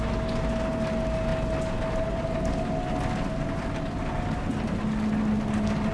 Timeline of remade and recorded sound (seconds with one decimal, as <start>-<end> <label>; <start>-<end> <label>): 0.0-5.9 recorded